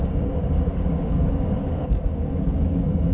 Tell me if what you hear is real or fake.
fake